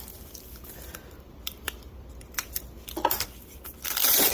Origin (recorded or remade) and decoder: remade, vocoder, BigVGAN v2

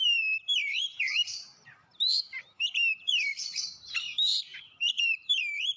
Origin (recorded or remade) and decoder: remade, vocoder, BigVGAN v2